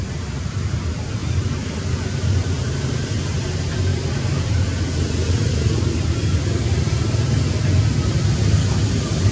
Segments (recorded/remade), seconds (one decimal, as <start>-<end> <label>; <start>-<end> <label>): 0.0-1.2 recorded; 1.2-2.7 remade; 2.7-9.3 recorded